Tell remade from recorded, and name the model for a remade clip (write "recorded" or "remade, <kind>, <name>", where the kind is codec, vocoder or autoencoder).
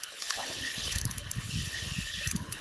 remade, codec, HILCodec